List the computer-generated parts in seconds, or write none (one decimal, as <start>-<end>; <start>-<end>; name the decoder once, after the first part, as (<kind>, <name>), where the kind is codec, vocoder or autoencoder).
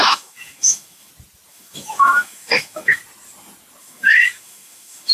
0.0-1.1 (autoencoder, DAC-VAE); 1.5-3.0; 3.8-5.1